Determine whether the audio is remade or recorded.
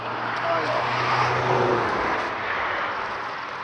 recorded